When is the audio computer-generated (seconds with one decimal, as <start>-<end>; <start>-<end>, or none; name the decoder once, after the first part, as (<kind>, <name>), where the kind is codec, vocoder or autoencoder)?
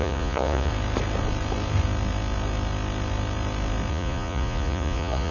0.0-0.7 (vocoder, Vocos); 3.9-5.3